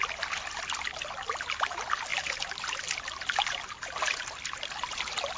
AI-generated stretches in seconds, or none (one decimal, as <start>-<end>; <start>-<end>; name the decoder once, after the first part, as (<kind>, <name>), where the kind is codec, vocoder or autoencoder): none